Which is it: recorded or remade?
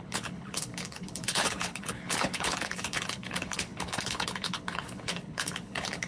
remade